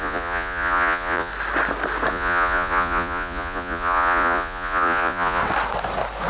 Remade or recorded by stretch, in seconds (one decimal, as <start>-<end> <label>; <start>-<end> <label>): 0.0-1.3 remade; 1.3-2.1 recorded; 2.1-5.4 remade; 5.4-6.3 recorded

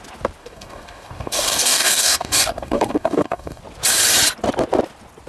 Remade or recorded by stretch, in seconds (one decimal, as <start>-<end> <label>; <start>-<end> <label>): 0.0-0.4 recorded; 0.4-3.6 remade; 3.6-5.3 recorded